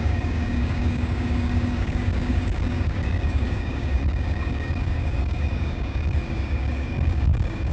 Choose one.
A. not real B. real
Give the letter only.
A